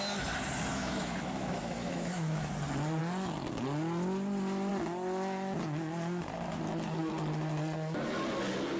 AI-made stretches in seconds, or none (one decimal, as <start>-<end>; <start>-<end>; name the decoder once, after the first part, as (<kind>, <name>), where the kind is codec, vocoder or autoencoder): 0.7-2.5 (autoencoder, DAC-VAE)